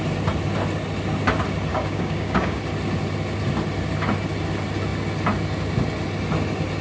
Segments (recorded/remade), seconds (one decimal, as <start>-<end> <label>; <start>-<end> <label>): 0.0-1.7 recorded; 1.7-2.6 remade; 2.6-6.8 recorded